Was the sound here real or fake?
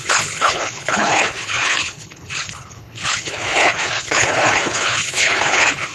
fake